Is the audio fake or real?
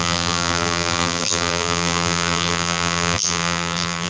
fake